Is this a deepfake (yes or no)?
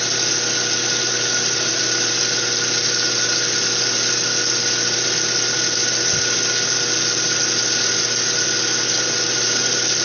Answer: no